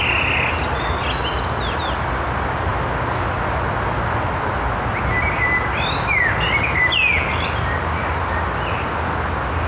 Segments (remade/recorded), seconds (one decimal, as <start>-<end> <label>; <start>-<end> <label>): 0.0-9.7 recorded